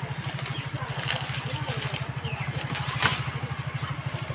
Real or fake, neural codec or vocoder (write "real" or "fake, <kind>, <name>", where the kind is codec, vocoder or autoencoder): real